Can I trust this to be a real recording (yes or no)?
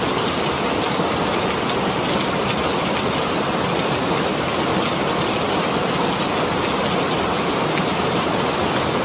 yes